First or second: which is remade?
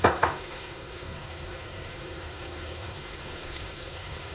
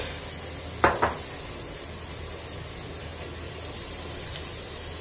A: first